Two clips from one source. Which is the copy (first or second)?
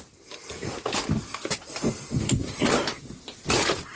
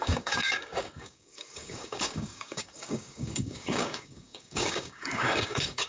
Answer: second